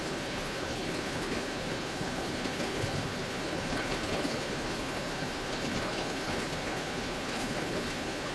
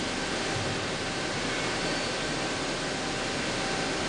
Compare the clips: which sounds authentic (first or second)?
second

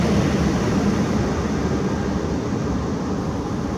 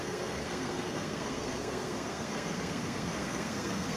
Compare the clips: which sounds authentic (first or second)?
first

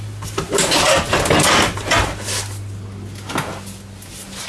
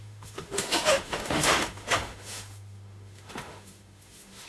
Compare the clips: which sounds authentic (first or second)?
first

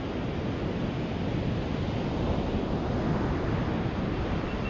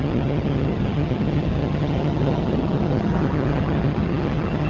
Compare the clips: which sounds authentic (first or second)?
first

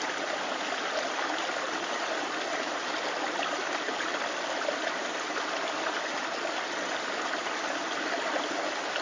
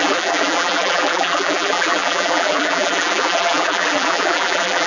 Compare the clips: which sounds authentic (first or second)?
first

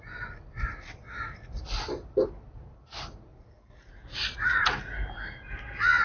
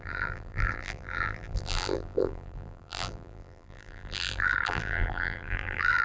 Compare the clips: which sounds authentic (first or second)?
first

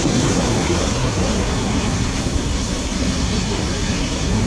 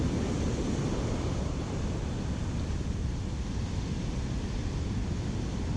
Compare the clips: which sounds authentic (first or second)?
second